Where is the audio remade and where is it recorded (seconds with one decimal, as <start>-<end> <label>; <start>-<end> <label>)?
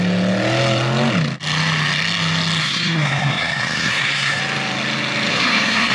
0.0-2.6 recorded; 2.6-4.4 remade; 4.4-5.3 recorded; 5.3-5.9 remade